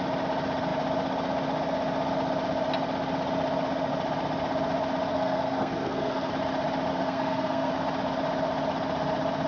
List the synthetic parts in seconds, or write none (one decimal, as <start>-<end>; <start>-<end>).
5.1-6.3; 6.9-7.7